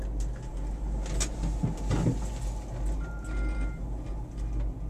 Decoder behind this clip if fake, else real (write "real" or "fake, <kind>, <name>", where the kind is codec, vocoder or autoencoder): real